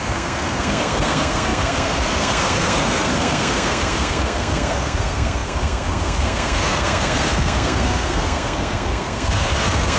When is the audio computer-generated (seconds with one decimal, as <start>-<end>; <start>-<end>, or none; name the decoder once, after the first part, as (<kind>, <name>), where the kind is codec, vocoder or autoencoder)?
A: 0.0-10.0 (codec, SNAC)